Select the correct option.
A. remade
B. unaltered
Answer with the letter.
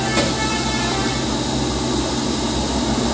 B